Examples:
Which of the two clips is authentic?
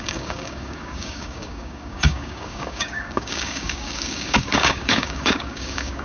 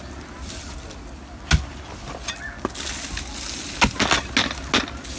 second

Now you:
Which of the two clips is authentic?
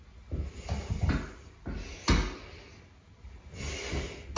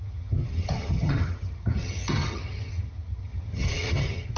first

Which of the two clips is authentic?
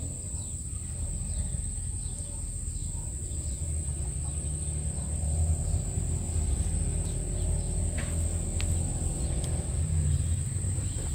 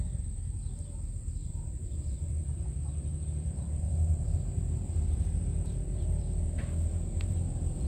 first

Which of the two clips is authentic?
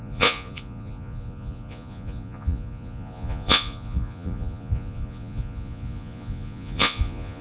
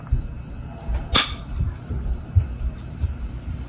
second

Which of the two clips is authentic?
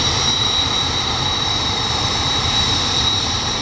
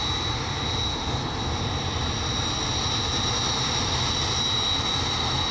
second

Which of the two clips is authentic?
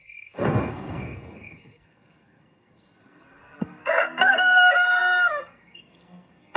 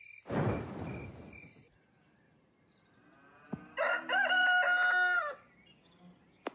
second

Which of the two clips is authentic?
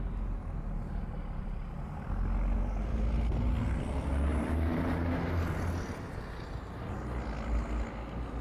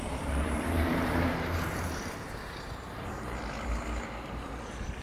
first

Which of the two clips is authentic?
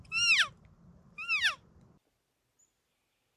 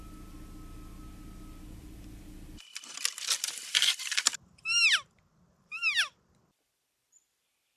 first